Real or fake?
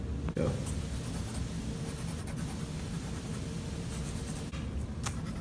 real